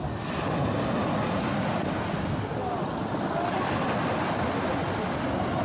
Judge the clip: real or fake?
real